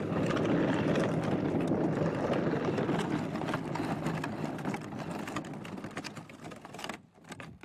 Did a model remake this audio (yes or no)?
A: no